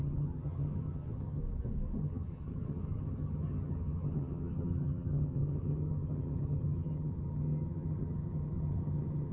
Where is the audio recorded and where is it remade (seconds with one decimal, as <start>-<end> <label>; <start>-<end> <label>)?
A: 0.0-1.4 remade; 1.4-2.0 recorded; 2.0-9.3 remade